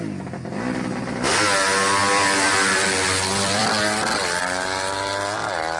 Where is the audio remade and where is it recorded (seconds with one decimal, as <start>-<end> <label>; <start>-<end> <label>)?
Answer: 0.0-2.0 recorded; 2.0-4.4 remade; 4.4-5.8 recorded